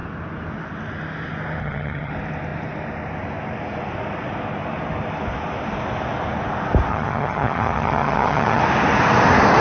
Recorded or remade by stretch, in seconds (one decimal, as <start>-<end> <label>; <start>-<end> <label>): 0.0-1.6 recorded; 1.6-2.1 remade; 2.1-6.9 recorded; 6.9-8.6 remade; 8.6-9.6 recorded